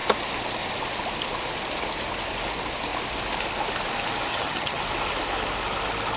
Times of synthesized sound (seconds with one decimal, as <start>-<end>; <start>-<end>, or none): 4.3-4.8